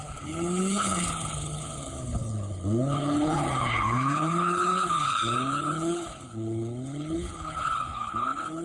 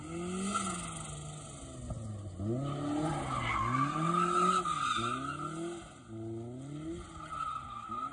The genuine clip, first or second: second